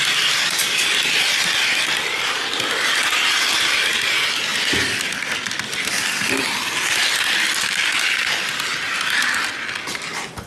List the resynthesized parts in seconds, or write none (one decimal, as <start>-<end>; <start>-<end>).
none